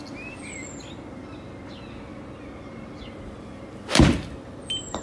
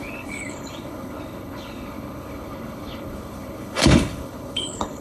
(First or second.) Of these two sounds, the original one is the first